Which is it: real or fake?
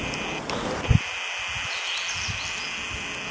real